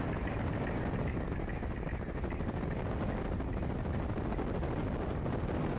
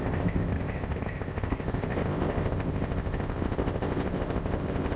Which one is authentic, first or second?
first